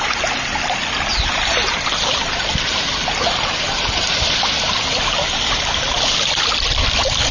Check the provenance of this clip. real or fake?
real